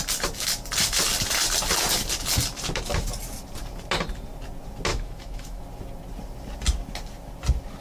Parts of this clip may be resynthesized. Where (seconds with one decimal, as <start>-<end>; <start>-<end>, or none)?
4.9-5.6